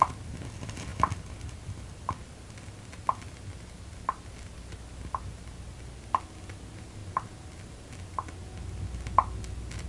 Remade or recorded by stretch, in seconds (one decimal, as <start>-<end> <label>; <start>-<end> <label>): 0.0-9.9 recorded